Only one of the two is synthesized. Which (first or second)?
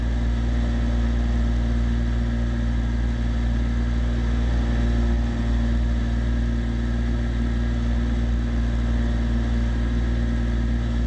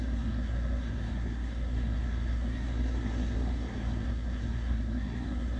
second